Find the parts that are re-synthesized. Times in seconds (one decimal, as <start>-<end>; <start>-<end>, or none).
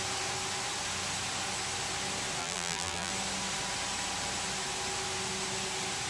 2.4-3.1